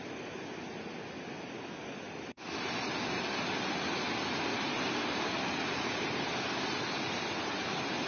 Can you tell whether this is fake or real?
real